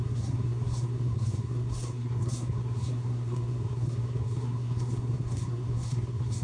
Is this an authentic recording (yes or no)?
no